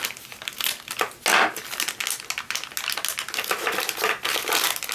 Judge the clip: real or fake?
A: real